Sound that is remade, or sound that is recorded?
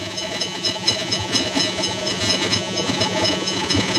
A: remade